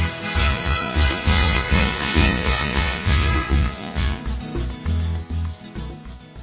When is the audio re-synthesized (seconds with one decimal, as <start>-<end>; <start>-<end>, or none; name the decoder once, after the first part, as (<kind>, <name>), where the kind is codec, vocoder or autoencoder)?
0.4-4.2 (vocoder, Vocos)